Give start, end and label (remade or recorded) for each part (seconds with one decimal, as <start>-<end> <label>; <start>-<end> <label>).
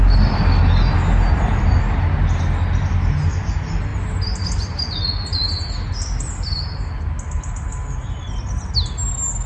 0.0-9.5 recorded